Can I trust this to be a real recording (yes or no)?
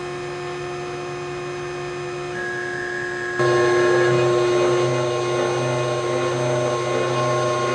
yes